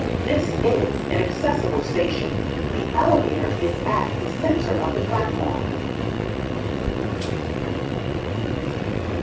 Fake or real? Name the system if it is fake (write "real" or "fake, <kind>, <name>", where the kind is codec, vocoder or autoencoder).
fake, vocoder, WaveNeXt